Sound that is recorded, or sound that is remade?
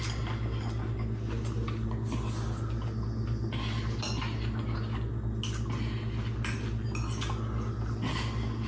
recorded